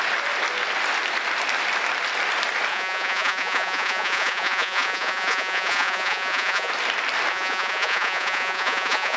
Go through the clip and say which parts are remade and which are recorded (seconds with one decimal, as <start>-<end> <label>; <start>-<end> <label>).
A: 0.0-2.7 recorded; 2.7-6.7 remade; 6.7-7.3 recorded; 7.3-9.2 remade